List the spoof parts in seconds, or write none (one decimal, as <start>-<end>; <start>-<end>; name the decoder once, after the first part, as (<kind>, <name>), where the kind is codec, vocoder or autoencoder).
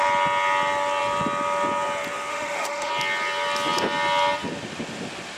2.3-2.9 (autoencoder, DAC-VAE)